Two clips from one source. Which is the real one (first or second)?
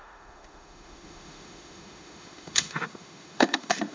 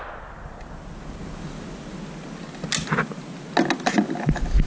second